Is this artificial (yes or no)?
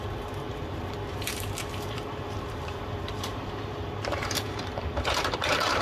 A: yes